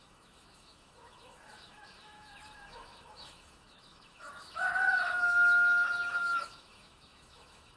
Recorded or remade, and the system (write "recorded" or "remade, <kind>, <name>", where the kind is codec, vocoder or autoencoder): remade, autoencoder, DAC-VAE